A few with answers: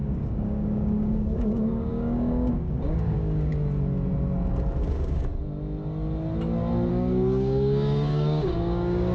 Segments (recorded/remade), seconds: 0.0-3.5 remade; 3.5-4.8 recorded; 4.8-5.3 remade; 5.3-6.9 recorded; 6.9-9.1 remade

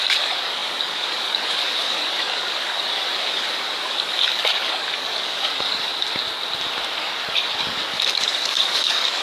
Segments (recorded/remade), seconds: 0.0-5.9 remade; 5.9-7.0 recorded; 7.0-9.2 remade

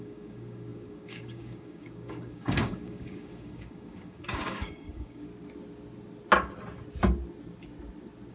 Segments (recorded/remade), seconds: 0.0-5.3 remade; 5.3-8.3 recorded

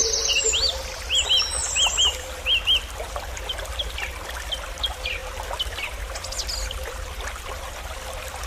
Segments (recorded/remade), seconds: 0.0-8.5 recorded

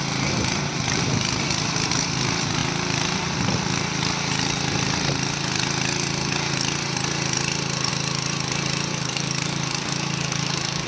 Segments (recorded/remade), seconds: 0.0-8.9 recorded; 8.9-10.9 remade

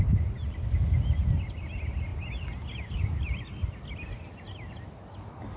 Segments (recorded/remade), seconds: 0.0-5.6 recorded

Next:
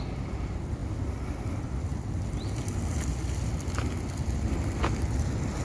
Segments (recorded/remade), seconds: 0.0-5.6 recorded

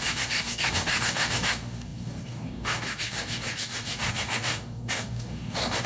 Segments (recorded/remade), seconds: 0.0-5.9 remade